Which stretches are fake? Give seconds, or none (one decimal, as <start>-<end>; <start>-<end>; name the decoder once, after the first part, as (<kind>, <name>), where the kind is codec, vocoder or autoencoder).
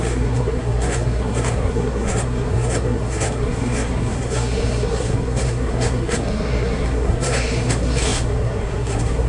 0.0-9.3 (codec, SNAC)